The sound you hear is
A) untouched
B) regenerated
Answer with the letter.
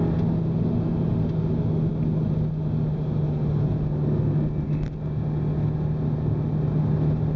A